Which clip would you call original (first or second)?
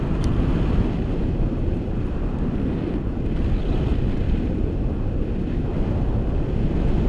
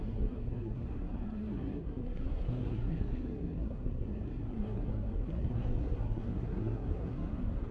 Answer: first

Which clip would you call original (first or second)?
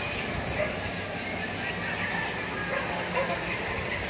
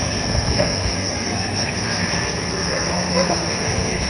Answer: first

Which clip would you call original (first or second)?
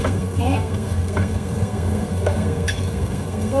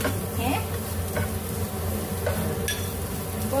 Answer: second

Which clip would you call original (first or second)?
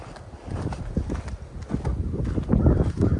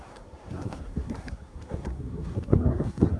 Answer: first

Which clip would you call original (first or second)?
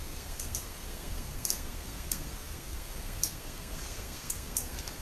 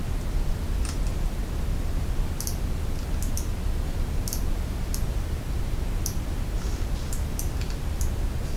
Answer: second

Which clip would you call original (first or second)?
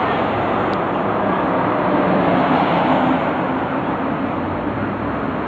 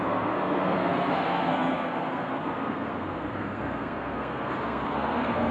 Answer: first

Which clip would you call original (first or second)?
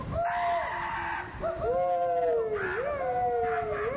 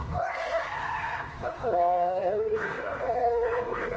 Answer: first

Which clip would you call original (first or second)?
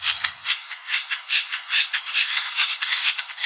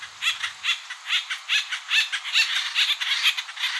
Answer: second